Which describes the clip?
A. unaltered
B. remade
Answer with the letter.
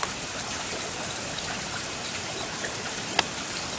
A